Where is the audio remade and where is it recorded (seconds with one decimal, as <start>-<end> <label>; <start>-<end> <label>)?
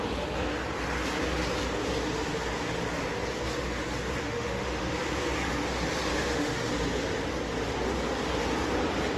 0.0-4.2 recorded; 4.2-4.9 remade; 4.9-6.1 recorded; 6.1-6.7 remade; 6.7-9.2 recorded